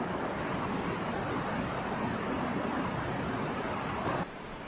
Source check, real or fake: real